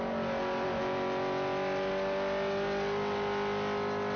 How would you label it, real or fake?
real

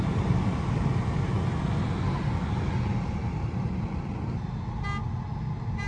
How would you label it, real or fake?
real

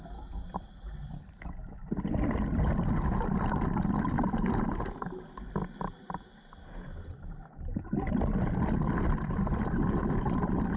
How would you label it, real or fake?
real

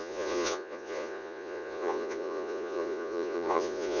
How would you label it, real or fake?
fake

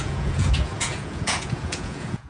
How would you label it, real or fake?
fake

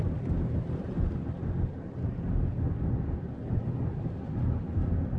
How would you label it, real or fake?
real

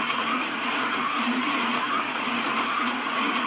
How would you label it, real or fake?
fake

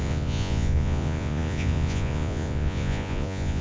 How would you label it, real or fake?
fake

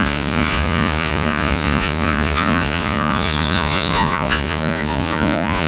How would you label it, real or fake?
fake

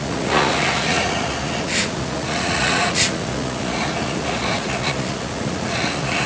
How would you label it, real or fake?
fake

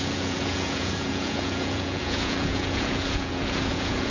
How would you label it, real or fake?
fake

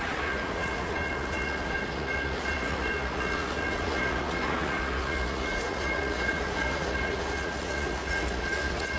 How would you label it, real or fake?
fake